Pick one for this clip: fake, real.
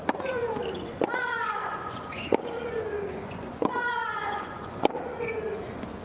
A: fake